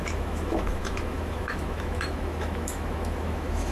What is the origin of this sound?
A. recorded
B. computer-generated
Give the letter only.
B